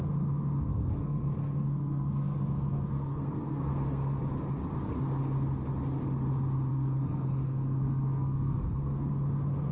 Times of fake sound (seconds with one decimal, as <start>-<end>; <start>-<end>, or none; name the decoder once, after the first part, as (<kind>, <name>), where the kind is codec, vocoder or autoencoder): 0.7-4.2 (codec, SNAC); 6.7-9.1